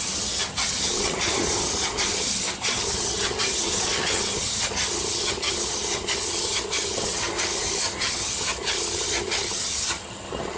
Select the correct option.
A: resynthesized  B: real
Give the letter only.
A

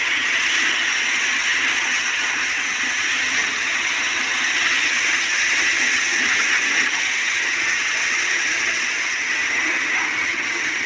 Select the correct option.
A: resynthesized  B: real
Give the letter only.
A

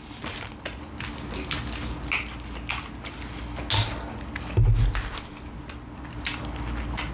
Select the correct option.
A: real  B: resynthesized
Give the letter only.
A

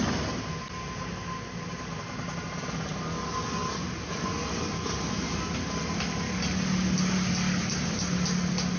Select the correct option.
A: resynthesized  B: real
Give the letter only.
B